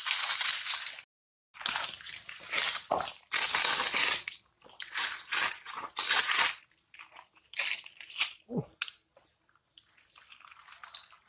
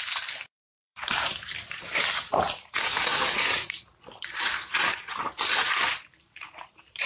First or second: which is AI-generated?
second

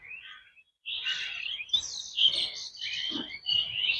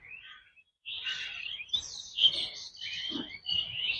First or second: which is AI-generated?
second